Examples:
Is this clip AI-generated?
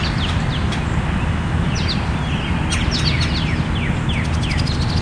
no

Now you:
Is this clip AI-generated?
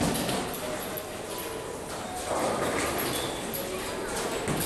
no